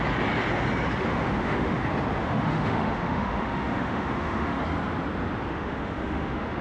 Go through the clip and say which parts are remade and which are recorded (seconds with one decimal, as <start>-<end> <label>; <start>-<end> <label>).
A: 0.0-1.0 recorded; 1.0-1.8 remade; 1.8-2.2 recorded; 2.2-4.6 remade; 4.6-5.5 recorded; 5.5-6.6 remade